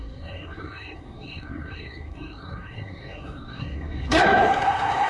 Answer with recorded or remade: remade